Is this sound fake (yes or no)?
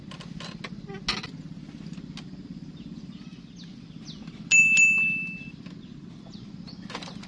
no